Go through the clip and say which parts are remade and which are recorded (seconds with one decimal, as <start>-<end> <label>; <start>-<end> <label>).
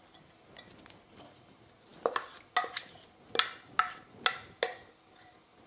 0.0-5.7 recorded